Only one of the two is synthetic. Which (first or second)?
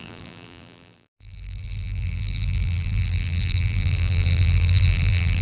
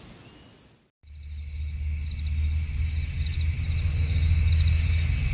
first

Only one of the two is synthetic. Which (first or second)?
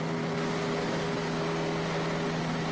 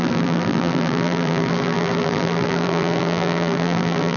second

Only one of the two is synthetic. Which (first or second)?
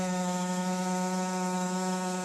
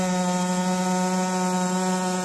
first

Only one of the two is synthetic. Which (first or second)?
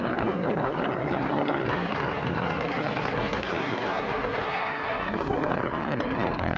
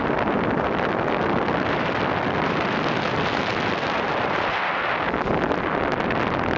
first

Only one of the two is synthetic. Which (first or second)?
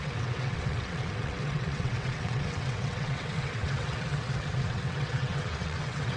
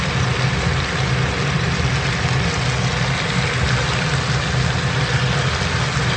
first